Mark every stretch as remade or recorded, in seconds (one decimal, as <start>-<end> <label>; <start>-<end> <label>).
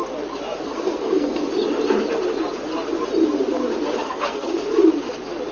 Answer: 0.0-0.6 recorded; 0.6-1.4 remade; 1.4-4.0 recorded; 4.0-4.5 remade; 4.5-5.5 recorded